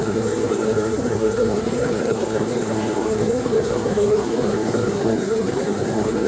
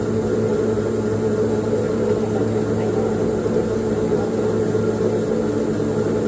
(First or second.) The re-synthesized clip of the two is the first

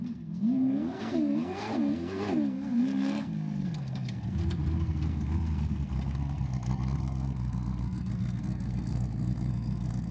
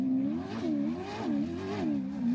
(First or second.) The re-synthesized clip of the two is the first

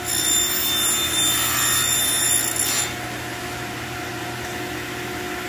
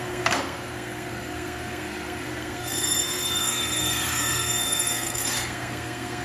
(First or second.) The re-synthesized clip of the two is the second